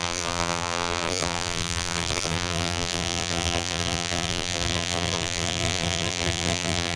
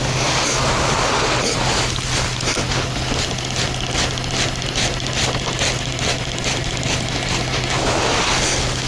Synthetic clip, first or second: first